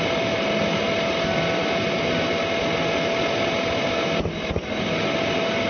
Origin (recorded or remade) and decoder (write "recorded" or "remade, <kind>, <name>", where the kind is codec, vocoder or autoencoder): recorded